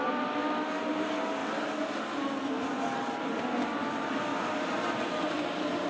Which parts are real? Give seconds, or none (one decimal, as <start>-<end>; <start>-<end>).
0.0-5.9